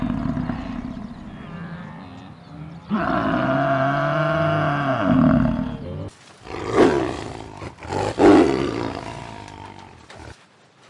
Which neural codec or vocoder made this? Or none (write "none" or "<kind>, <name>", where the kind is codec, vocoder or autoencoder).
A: none